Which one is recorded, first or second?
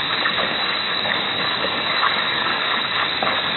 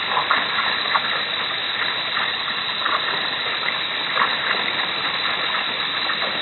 second